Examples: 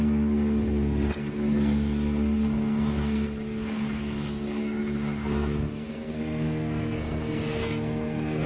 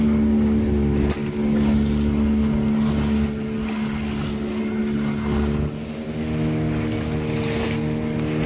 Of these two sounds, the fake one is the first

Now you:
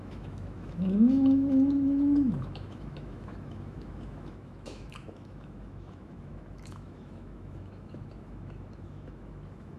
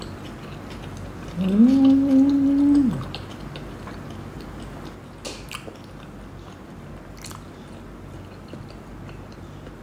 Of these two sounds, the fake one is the first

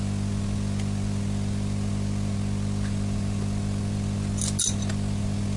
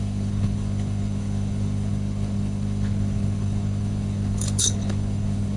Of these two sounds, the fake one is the second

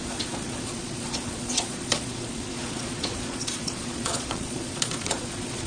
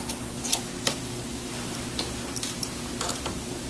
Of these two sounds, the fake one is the first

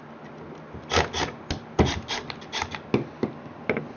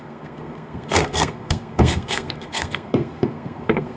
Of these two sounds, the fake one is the second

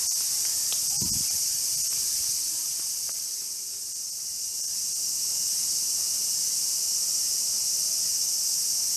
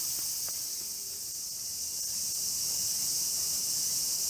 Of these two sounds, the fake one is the first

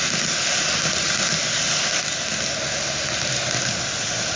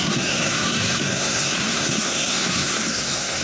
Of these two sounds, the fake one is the second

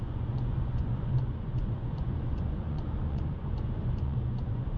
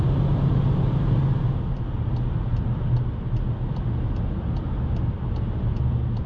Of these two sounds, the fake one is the first